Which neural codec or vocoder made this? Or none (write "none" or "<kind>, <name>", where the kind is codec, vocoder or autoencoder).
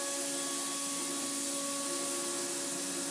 none